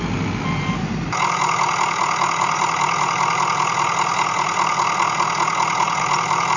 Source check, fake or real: real